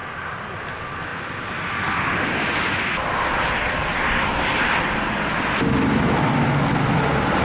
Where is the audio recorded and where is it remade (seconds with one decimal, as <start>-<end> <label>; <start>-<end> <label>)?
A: 0.0-7.4 recorded